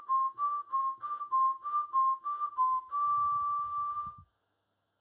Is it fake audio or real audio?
fake